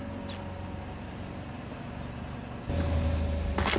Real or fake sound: real